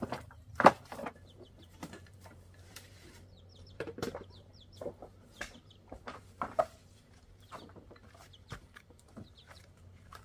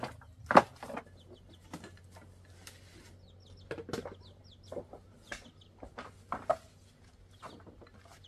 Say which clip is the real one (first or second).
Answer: second